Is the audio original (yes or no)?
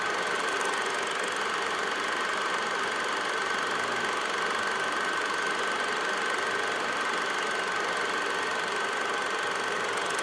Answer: yes